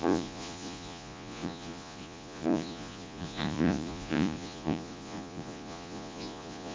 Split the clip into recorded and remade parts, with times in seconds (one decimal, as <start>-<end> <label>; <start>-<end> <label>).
0.0-6.7 remade